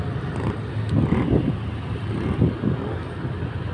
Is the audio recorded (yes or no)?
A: yes